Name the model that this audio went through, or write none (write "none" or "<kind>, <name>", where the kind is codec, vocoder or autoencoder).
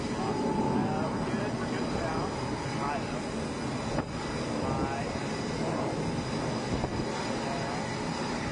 none